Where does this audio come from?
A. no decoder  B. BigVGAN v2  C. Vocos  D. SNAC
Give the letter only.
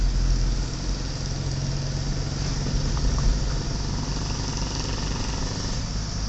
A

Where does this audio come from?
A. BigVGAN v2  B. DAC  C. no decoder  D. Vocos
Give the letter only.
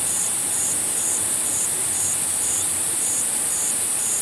A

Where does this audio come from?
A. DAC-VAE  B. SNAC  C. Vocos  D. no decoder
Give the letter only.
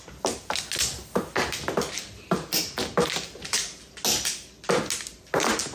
D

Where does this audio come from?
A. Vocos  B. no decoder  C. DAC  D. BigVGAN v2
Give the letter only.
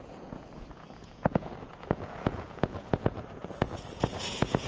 A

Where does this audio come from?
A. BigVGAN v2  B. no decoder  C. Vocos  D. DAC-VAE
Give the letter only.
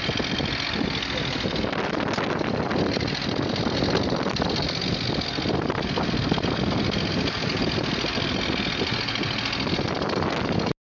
B